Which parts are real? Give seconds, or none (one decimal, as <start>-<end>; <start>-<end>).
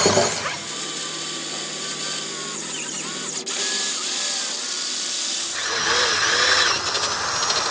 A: 0.0-7.7